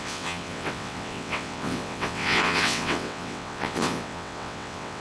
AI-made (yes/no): yes